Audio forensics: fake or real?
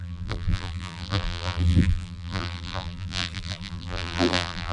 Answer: fake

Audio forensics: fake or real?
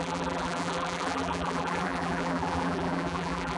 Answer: fake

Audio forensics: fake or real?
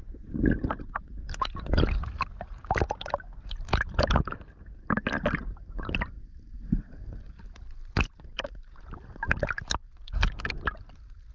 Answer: real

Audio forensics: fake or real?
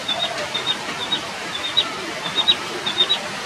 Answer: real